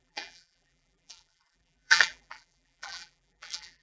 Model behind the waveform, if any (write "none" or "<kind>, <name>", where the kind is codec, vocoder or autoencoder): vocoder, BigVGAN v2